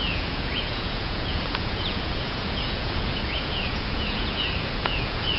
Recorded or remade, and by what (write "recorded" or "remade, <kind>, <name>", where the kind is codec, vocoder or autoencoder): remade, vocoder, Vocos